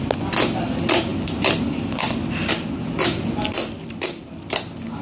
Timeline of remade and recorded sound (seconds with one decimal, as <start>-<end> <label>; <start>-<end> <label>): 0.0-5.0 recorded